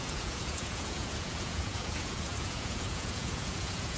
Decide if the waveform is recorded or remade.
remade